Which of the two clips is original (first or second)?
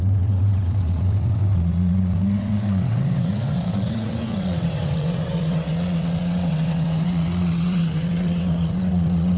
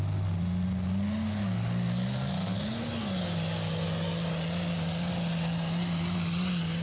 second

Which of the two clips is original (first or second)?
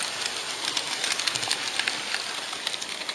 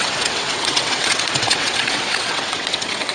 first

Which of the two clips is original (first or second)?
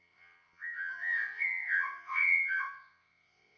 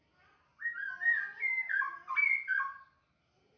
second